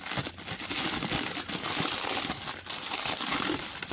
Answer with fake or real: real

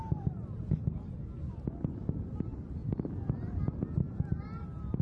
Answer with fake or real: real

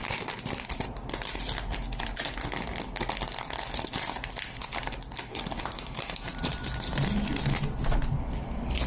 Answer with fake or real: real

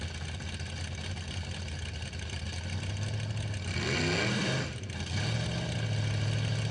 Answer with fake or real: real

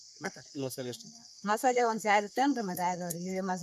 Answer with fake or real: fake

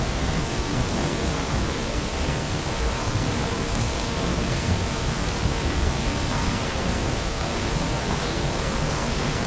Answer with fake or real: fake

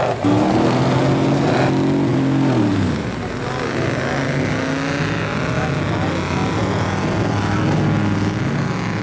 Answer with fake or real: real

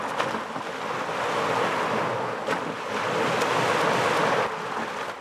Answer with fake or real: real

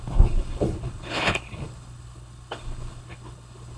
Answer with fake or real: fake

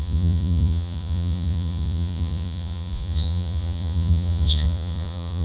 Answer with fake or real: fake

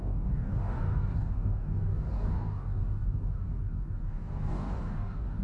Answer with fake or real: fake